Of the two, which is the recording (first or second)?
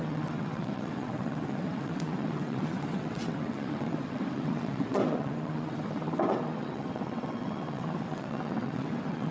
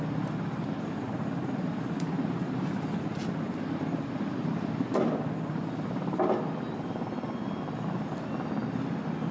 second